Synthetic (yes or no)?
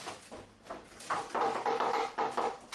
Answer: yes